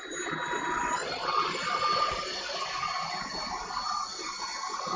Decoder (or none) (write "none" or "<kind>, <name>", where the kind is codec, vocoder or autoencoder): none